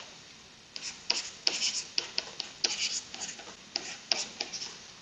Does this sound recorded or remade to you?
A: recorded